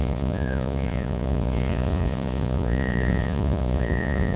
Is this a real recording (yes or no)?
no